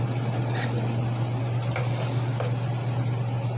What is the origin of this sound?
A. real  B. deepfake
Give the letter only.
A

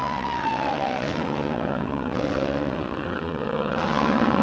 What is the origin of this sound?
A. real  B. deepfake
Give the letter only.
B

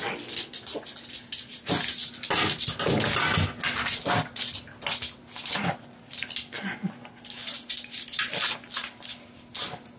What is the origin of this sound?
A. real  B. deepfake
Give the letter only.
A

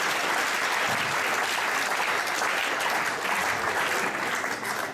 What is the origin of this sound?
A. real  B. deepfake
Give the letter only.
A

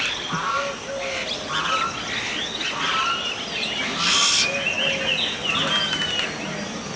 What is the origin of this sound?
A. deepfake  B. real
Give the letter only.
B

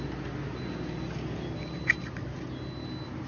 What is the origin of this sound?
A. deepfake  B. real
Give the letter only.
B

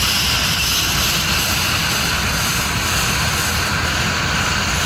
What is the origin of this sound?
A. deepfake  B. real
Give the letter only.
B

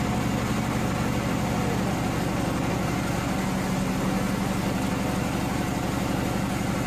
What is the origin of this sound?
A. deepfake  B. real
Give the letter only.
B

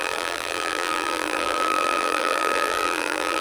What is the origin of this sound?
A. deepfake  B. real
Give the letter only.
A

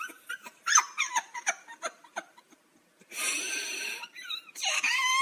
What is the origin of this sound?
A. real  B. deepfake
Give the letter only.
A